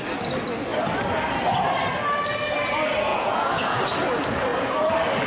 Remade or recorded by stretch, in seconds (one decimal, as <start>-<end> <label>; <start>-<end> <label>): 0.0-3.1 recorded; 3.1-3.8 remade; 3.8-5.3 recorded